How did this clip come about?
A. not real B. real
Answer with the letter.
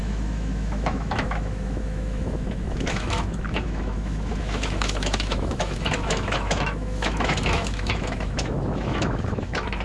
A